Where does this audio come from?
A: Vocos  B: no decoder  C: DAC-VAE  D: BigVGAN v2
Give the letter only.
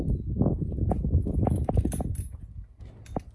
B